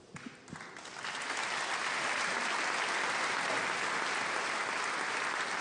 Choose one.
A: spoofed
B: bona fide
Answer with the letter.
B